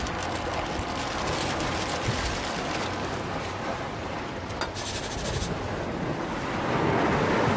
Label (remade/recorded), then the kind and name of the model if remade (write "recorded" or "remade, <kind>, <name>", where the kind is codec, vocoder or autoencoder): recorded